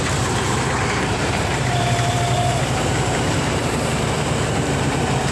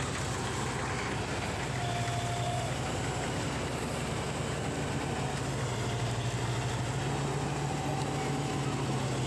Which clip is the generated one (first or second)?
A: first